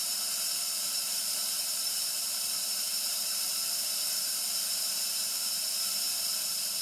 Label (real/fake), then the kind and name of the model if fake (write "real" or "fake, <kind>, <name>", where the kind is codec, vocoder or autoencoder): fake, vocoder, BigVGAN v2